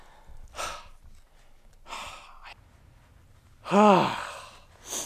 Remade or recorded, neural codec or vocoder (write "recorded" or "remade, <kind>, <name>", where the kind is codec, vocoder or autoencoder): recorded